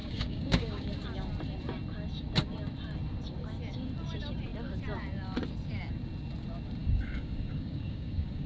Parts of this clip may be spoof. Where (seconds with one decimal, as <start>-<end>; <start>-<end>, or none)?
0.0-0.9; 6.8-8.5